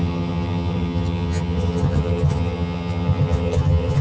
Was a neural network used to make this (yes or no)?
yes